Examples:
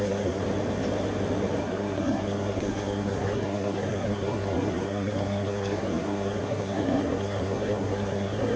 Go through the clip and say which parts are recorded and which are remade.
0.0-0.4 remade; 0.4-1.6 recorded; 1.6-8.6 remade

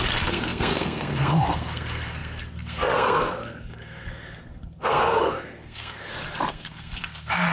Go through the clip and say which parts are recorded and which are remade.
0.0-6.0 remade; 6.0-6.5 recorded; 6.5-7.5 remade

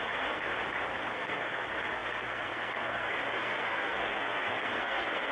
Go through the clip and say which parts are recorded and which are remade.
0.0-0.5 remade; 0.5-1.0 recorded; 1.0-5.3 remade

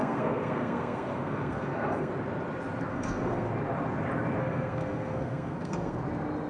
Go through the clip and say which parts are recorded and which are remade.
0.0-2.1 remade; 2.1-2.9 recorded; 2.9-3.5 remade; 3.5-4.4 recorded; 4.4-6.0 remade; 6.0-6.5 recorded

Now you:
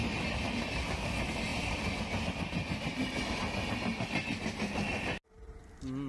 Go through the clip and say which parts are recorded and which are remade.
0.0-6.1 recorded

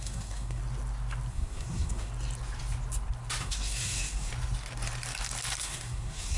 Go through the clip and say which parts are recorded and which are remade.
0.0-0.6 remade; 0.6-1.3 recorded; 1.3-2.1 remade; 2.1-3.4 recorded; 3.4-4.3 remade; 4.3-5.6 recorded; 5.6-6.4 remade